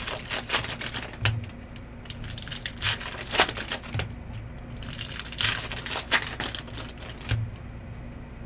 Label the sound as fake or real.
real